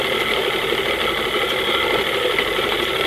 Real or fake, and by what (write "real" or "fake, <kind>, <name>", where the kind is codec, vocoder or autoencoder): real